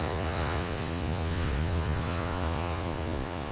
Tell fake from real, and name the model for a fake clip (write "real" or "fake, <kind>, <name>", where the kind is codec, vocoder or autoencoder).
fake, vocoder, Vocos